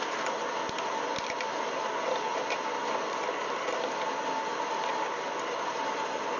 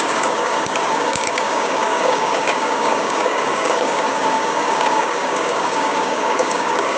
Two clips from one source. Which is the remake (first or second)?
second